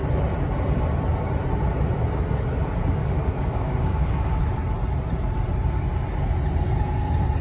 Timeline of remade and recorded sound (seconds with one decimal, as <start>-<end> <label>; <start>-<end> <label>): 0.0-3.0 recorded; 3.0-4.4 remade; 4.4-7.4 recorded